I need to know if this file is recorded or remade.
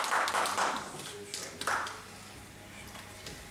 recorded